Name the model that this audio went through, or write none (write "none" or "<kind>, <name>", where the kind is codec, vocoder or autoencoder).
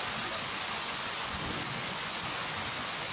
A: vocoder, Vocos